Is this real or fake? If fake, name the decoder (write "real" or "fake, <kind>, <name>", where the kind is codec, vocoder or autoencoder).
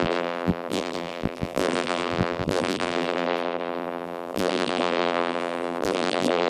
fake, vocoder, BigVGAN v2